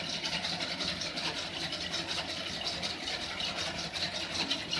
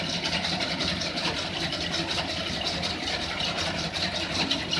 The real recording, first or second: first